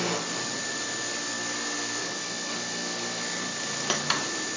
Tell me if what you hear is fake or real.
real